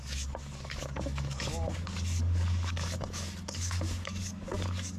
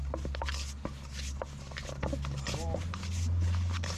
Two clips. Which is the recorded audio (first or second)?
second